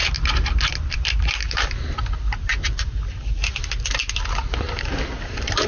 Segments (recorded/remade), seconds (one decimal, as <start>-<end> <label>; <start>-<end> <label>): 0.0-5.7 recorded